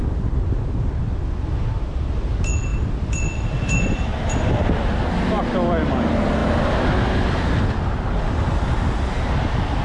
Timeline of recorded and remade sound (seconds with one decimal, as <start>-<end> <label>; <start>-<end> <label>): 0.0-2.7 recorded; 2.7-5.1 remade; 5.1-9.8 recorded